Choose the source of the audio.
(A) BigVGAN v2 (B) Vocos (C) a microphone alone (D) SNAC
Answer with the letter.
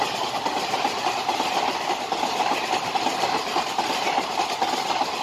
C